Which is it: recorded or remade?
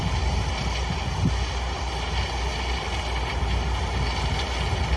recorded